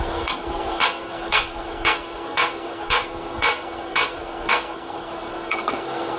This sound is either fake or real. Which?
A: fake